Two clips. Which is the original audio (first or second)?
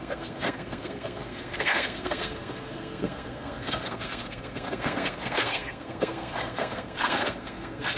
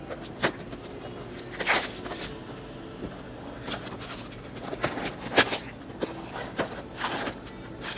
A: second